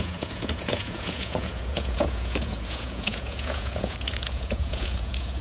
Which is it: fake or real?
fake